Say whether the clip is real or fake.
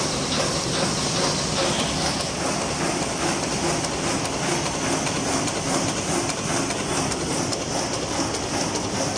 real